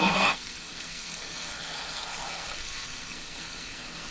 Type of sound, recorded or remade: remade